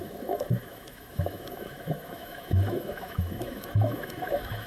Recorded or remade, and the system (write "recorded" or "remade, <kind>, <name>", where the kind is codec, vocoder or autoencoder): remade, autoencoder, DAC-VAE